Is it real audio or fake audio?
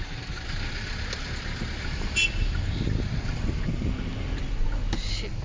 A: real